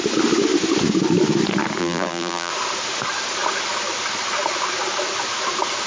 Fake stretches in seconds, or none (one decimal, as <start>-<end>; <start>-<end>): 1.8-2.5